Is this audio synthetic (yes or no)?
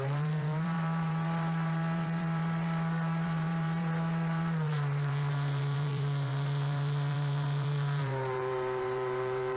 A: yes